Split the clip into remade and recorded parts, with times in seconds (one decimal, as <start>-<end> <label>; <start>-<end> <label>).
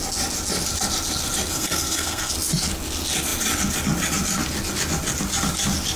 0.0-1.5 recorded; 1.5-2.3 remade; 2.3-6.0 recorded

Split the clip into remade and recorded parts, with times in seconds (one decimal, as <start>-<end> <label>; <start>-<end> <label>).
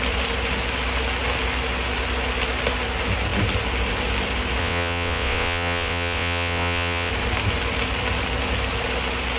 0.0-4.6 recorded; 4.6-7.1 remade; 7.1-9.4 recorded